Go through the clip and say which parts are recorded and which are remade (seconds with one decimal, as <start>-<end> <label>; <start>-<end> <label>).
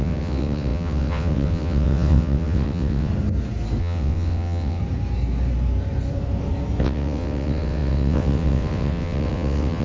0.0-3.1 remade; 3.1-3.8 recorded; 3.8-4.8 remade; 4.8-6.8 recorded; 6.8-9.8 remade